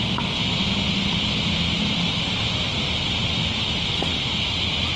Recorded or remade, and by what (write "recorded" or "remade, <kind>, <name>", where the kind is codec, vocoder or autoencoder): recorded